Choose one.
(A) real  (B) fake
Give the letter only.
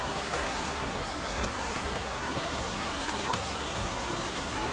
B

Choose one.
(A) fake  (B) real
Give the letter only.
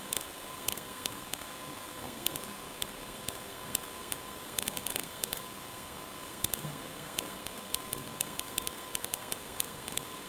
A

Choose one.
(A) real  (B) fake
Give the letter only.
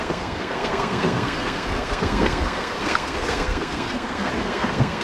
B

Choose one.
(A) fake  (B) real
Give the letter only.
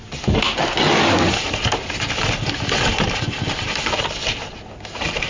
B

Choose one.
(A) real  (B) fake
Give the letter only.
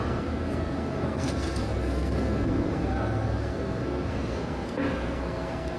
B